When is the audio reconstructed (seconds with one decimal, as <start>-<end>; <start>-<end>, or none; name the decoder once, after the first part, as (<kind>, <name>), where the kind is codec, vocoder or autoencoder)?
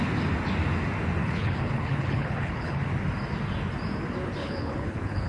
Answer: 1.2-2.8 (codec, HILCodec); 4.4-5.3